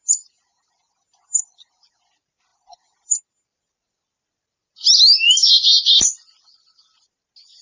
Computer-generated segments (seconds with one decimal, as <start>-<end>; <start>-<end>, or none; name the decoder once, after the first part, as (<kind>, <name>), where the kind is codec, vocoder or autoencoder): none